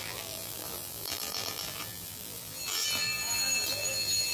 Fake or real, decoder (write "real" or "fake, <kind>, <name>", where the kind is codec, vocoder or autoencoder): fake, vocoder, BigVGAN v2